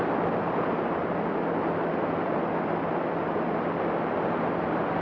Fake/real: real